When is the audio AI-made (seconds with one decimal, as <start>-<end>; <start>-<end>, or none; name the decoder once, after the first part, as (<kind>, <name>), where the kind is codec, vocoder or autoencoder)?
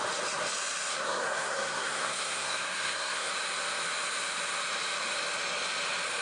0.9-3.3 (codec, SNAC)